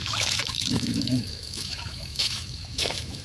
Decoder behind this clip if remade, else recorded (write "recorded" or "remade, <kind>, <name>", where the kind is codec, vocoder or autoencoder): remade, autoencoder, DAC-VAE